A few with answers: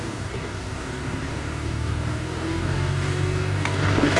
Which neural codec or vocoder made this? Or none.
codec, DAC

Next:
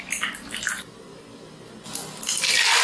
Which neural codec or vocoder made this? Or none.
none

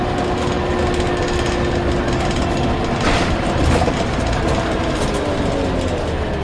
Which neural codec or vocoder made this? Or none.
none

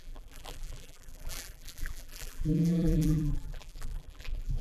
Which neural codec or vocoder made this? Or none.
vocoder, BigVGAN v2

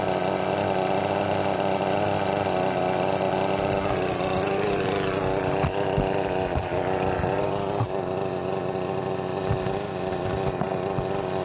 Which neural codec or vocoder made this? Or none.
none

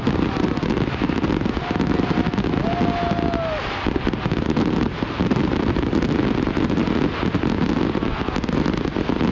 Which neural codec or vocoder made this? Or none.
none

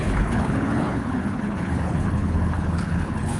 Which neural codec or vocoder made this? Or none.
codec, HILCodec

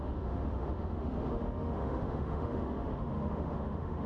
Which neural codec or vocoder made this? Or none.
autoencoder, DAC-VAE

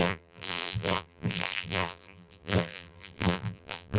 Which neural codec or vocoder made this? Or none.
vocoder, BigVGAN v2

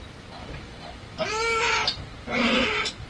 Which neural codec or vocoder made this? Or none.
none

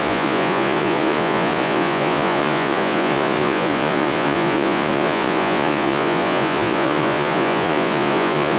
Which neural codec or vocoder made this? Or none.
vocoder, Vocos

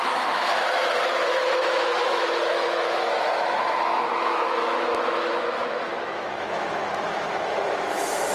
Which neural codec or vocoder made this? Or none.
autoencoder, DAC-VAE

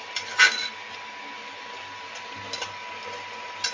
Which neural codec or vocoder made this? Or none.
none